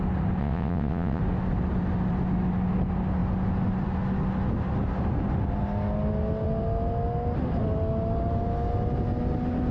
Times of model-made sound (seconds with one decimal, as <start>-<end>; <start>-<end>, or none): 0.4-1.2